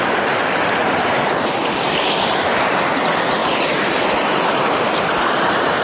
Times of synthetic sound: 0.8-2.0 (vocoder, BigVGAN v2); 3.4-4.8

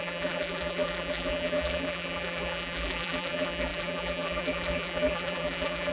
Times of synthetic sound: 0.0-5.9 (vocoder, BigVGAN v2)